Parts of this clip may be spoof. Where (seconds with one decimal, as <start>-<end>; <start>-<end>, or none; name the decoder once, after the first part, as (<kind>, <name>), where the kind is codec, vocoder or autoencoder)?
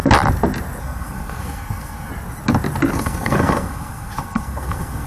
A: 0.8-2.1 (codec, SNAC); 2.9-5.1